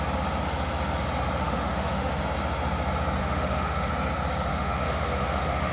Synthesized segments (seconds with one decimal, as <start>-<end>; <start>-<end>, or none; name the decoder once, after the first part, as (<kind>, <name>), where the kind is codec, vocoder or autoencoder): 1.4-2.2 (autoencoder, DAC-VAE); 3.2-3.9; 4.5-5.7